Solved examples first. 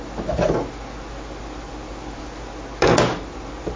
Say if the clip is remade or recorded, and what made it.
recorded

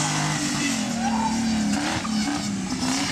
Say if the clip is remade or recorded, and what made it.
recorded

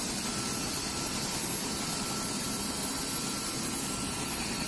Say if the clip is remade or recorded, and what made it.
recorded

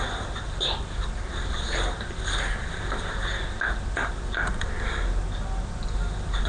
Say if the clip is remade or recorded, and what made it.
recorded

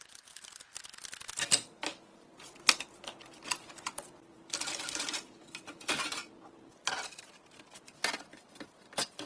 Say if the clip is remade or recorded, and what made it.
recorded